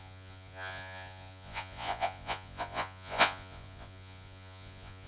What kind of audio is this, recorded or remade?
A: remade